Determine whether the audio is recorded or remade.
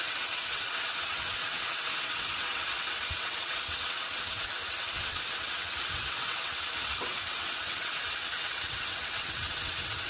remade